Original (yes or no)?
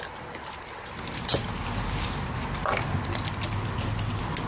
yes